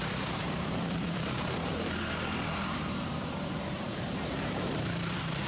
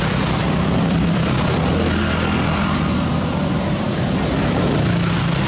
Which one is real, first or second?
second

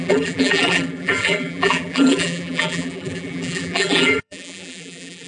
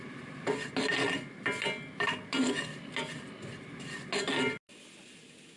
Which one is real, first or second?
second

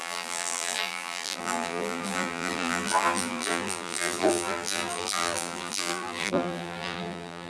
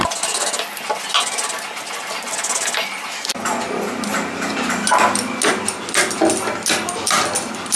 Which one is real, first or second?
second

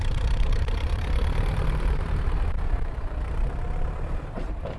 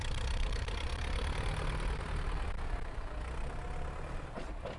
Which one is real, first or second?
second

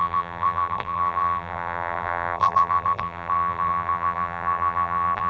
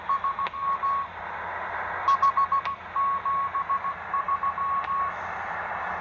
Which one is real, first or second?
second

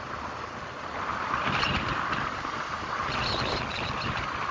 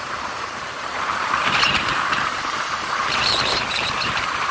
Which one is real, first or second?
first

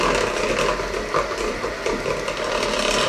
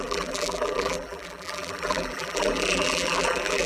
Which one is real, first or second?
first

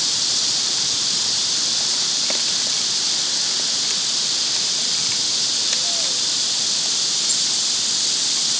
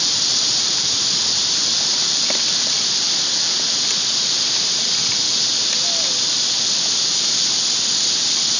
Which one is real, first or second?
second